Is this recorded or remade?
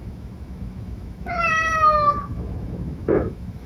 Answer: remade